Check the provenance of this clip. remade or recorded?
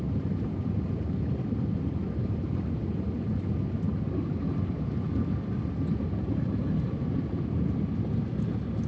recorded